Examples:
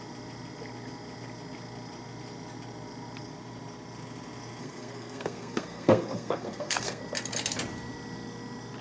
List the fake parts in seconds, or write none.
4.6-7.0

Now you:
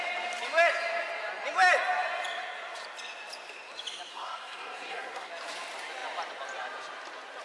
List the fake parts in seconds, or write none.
4.1-5.3

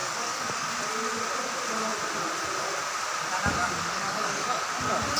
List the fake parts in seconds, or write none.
0.0-0.7; 3.6-4.6

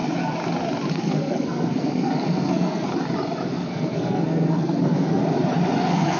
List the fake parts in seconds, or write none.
0.9-2.9; 3.5-5.2; 5.8-6.2

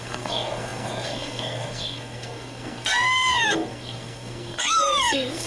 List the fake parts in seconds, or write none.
0.0-5.5

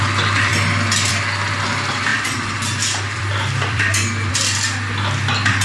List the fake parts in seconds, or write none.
2.1-4.3

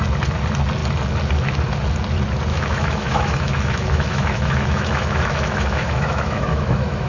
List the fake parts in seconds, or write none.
2.5-7.1

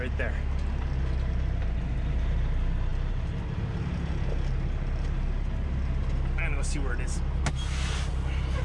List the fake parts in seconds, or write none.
none